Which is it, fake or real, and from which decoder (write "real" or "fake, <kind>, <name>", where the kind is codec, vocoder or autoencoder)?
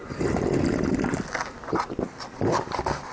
real